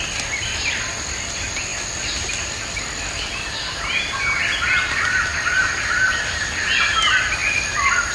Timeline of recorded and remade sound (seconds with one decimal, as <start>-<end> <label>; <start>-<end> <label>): 0.0-8.1 recorded

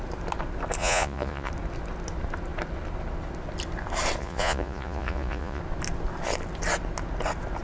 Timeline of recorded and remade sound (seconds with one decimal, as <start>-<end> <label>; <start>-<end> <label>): 0.0-0.8 recorded; 0.8-1.5 remade; 1.5-4.2 recorded; 4.2-5.6 remade; 5.6-7.6 recorded

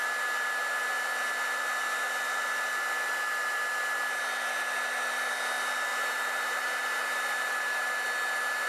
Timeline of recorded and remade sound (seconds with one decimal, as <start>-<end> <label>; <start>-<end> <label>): 0.0-5.9 recorded; 5.9-7.9 remade; 7.9-8.7 recorded